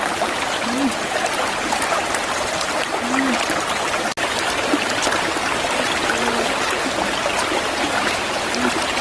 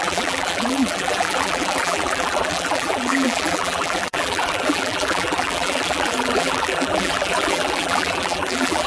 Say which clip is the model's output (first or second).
second